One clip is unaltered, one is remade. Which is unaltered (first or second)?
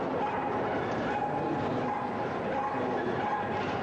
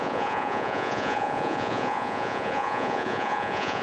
first